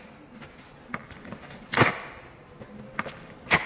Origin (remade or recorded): recorded